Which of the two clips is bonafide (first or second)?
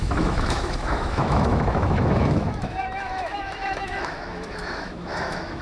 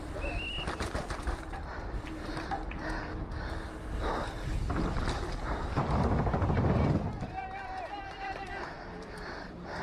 second